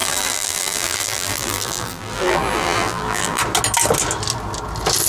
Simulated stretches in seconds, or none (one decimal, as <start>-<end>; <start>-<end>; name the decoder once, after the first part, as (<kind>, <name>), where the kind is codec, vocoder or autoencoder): 0.0-3.4 (vocoder, BigVGAN v2)